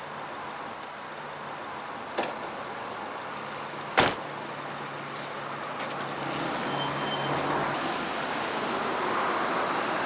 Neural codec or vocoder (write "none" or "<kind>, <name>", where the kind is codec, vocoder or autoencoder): none